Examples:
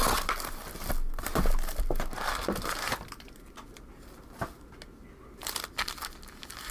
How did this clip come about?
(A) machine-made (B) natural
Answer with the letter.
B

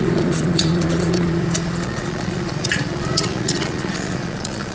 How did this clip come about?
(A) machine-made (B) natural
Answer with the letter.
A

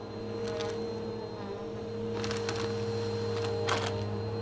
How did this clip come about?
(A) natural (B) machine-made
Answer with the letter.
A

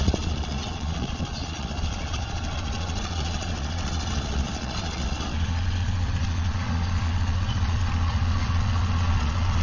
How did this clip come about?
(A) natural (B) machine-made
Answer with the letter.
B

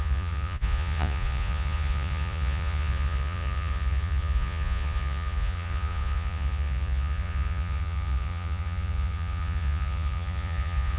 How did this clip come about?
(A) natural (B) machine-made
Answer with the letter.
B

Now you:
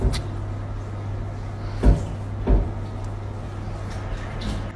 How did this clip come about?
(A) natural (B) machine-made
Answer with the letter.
A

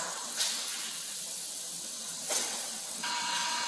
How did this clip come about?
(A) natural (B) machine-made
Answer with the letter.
B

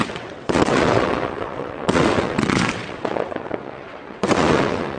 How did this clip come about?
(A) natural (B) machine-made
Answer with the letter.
B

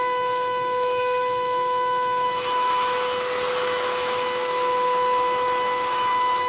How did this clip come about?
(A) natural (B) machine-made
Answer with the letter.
B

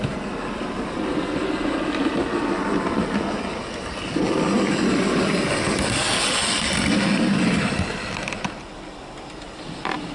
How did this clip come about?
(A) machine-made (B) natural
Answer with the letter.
B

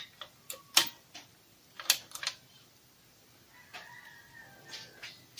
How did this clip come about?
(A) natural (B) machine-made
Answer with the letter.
A